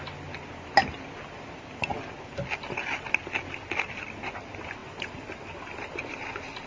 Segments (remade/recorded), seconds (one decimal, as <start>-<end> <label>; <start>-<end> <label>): 0.0-4.8 recorded; 4.8-6.7 remade